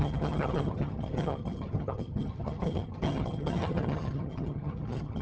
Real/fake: fake